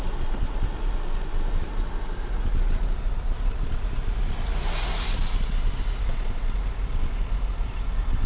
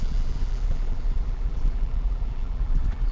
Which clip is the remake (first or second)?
second